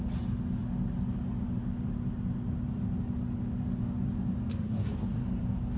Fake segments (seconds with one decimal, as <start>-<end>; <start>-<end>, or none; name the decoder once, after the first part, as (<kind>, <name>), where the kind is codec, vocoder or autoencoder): 4.5-5.2 (codec, SNAC)